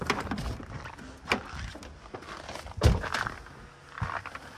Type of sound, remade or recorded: recorded